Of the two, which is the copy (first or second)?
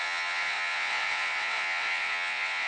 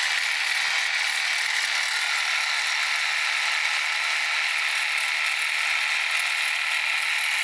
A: first